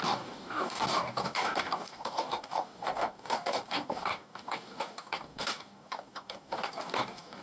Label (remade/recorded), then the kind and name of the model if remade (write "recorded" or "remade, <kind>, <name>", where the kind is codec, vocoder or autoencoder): remade, codec, DAC